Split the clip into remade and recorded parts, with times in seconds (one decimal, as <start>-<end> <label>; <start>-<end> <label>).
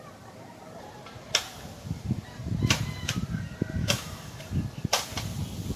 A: 0.0-3.8 recorded; 3.8-4.4 remade; 4.4-5.8 recorded